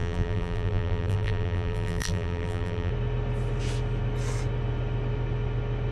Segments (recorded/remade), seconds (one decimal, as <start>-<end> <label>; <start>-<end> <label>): 0.0-2.9 remade; 2.9-5.9 recorded